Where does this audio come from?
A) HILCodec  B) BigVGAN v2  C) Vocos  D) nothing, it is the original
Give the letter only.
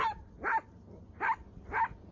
D